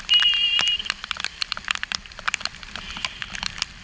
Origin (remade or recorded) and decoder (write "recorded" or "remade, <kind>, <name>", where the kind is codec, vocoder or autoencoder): remade, vocoder, BigVGAN v2